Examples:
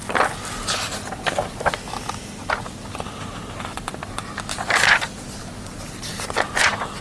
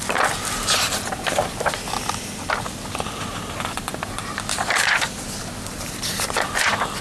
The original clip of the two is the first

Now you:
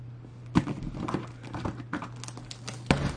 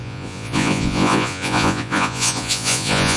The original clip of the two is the first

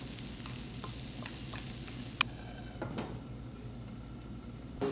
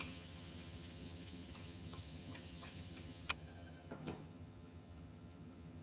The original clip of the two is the first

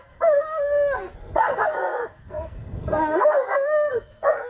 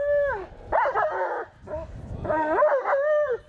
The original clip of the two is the second